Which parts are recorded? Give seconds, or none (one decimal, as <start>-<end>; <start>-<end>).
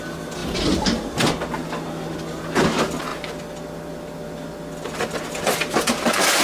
0.0-0.4; 1.3-6.4